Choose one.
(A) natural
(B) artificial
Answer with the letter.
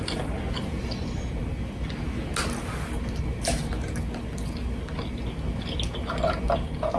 A